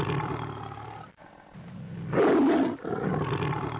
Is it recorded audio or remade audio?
recorded